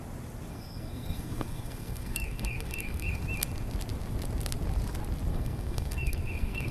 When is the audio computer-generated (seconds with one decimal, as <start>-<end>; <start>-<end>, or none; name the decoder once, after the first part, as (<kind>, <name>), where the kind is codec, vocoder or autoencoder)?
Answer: 0.5-3.2 (codec, SNAC); 5.3-6.7